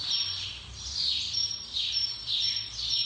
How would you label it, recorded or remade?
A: remade